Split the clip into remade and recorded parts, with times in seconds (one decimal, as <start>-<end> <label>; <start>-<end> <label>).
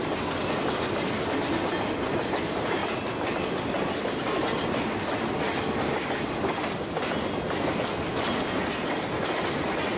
0.0-10.0 recorded